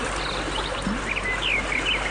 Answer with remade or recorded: recorded